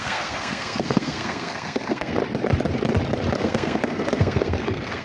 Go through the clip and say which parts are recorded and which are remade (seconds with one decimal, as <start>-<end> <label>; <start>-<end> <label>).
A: 0.0-2.2 remade; 2.2-3.4 recorded; 3.4-5.0 remade